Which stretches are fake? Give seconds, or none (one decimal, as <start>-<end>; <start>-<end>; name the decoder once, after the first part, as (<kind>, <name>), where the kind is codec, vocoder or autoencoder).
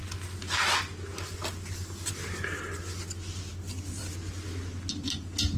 none